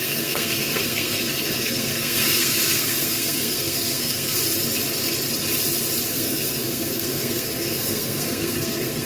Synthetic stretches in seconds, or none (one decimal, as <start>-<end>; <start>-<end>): 0.0-4.4; 6.1-9.1